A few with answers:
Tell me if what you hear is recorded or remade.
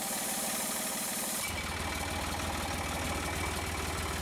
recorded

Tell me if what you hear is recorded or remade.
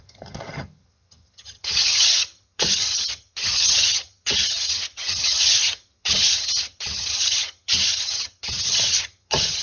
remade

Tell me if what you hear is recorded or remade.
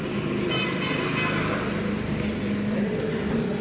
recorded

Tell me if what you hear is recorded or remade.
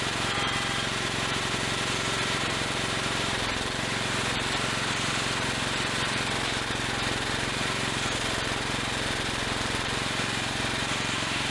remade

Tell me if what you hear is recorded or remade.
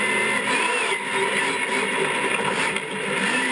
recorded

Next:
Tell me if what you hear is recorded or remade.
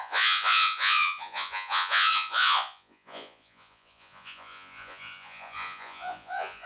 remade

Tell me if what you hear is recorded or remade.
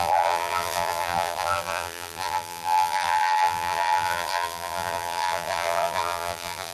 remade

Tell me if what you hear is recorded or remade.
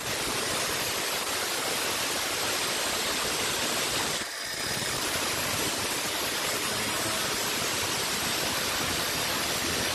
recorded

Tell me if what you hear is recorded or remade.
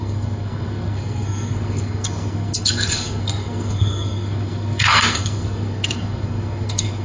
remade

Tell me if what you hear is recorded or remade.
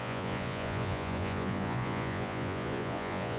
remade